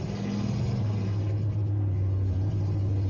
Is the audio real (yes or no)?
yes